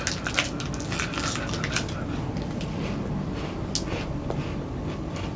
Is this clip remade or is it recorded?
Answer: recorded